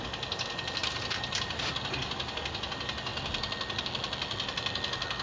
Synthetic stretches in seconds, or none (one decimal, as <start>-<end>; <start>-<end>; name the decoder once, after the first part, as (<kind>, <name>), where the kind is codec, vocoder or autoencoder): none